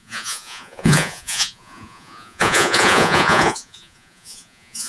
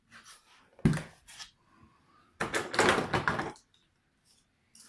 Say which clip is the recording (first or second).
second